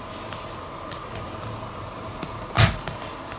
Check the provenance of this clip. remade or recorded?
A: recorded